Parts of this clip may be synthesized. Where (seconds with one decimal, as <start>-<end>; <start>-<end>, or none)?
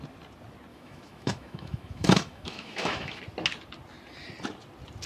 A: 0.7-3.2